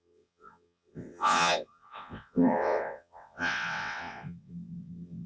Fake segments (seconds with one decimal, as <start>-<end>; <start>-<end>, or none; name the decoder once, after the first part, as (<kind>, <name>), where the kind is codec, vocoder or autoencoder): 0.0-5.3 (vocoder, WaveNeXt)